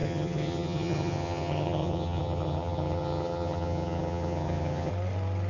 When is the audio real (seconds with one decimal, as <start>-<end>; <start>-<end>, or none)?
4.9-5.5